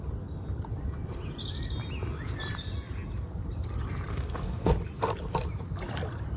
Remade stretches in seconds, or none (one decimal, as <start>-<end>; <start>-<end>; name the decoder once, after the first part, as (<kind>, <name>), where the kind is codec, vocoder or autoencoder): 4.1-4.7 (autoencoder, DAC-VAE)